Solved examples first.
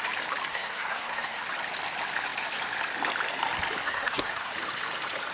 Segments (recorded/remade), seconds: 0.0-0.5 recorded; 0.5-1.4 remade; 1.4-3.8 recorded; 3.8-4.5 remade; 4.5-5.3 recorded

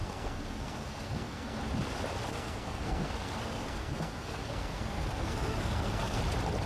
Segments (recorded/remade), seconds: 0.0-1.6 remade; 1.6-2.3 recorded; 2.3-6.2 remade; 6.2-6.7 recorded

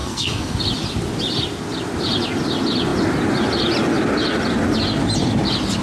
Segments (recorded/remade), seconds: 0.0-0.6 remade; 0.6-5.8 recorded

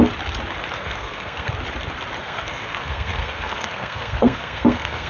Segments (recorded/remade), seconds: 0.0-0.8 recorded; 0.8-1.5 remade; 1.5-2.2 recorded; 2.2-5.1 remade

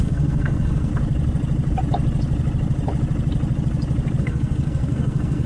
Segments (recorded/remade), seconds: 0.0-0.9 remade; 0.9-4.2 recorded; 4.2-5.5 remade